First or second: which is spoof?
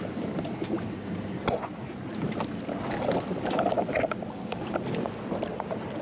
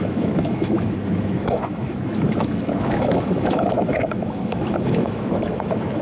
second